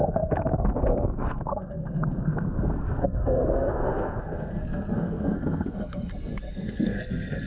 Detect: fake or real fake